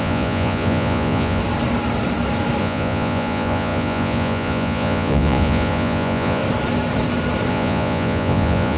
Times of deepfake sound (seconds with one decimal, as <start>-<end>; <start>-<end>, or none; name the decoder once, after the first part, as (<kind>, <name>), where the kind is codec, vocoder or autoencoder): 0.0-1.4 (vocoder, Vocos); 2.6-6.4; 7.5-8.8